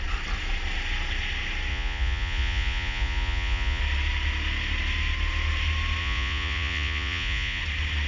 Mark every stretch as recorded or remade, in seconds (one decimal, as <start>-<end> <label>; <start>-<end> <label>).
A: 0.0-1.7 recorded; 1.7-3.8 remade; 3.8-6.0 recorded; 6.0-7.6 remade; 7.6-8.1 recorded